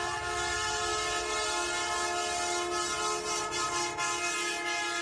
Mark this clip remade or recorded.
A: recorded